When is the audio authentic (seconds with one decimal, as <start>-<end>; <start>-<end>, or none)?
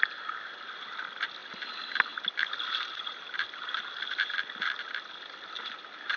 0.0-6.2